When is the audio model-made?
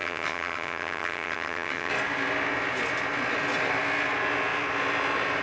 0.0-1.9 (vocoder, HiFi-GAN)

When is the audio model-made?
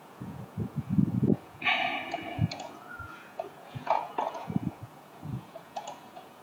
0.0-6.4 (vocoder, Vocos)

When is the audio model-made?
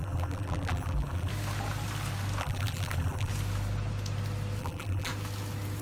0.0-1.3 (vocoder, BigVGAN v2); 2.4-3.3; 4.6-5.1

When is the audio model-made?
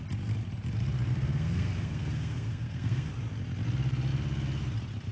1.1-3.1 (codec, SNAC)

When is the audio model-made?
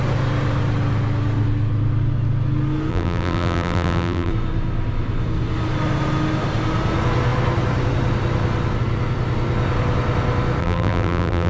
2.9-4.3 (vocoder, BigVGAN v2); 10.6-11.5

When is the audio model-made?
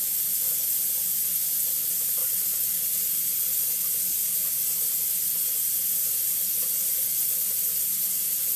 none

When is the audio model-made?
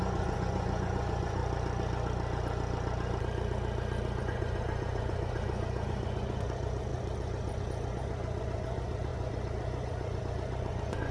0.0-1.4 (vocoder, Vocos); 4.2-11.1